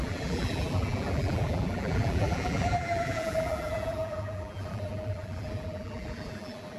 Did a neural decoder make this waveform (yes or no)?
yes